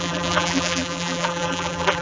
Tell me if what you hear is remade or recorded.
remade